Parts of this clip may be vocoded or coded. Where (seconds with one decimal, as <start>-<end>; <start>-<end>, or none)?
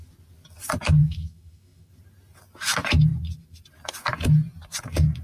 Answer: 1.0-1.9